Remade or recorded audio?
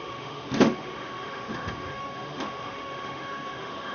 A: remade